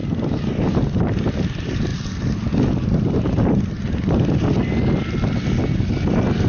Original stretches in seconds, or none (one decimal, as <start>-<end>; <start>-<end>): 0.0-6.5